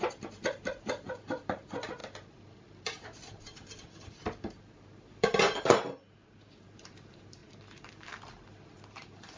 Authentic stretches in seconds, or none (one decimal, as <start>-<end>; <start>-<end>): none